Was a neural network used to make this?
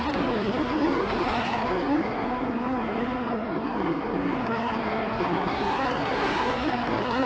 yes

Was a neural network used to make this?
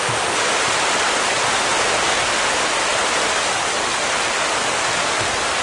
no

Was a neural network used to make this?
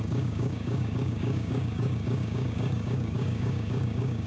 yes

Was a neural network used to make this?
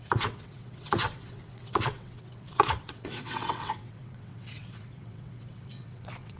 yes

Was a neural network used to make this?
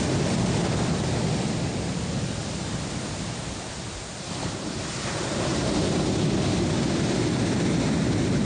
no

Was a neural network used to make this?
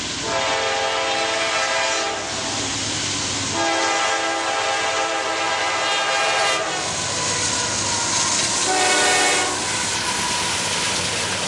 no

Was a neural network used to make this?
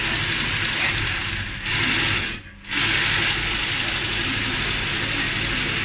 no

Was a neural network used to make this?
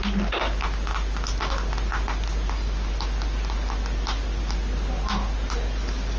no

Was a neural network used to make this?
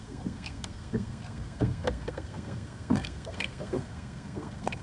yes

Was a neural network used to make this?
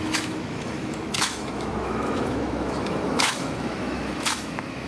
yes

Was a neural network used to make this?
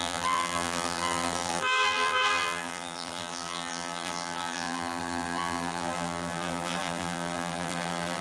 yes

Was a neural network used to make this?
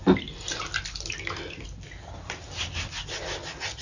no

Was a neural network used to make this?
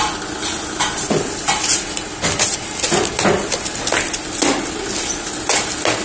no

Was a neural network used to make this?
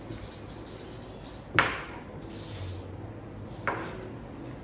no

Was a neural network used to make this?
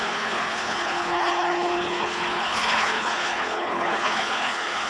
yes